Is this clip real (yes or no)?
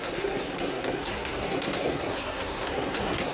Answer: no